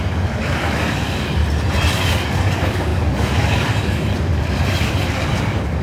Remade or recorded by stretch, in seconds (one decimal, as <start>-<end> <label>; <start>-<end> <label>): 0.0-1.4 remade; 1.4-1.9 recorded; 1.9-5.8 remade

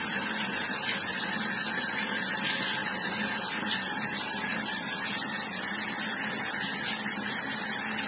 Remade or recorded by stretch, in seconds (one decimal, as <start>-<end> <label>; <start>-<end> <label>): 0.0-8.1 recorded

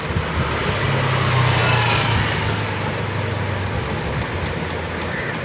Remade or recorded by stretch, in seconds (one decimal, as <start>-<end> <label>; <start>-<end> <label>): 0.0-5.4 recorded

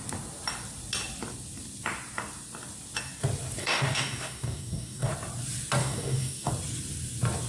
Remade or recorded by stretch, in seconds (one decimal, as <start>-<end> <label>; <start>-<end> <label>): 0.0-3.6 recorded; 3.6-5.1 remade; 5.1-5.8 recorded; 5.8-6.5 remade; 6.5-7.5 recorded